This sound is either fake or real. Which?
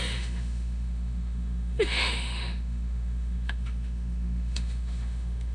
fake